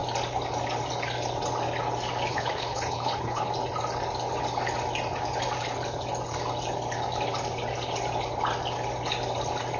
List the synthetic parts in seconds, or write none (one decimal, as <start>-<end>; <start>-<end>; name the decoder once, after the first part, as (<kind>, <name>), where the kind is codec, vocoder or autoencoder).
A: 2.3-3.5 (codec, HILCodec)